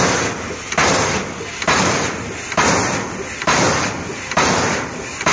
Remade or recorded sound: recorded